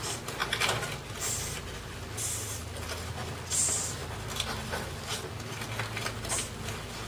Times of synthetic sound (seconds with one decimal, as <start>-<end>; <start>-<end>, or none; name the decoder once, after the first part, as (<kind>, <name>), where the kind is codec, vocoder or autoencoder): none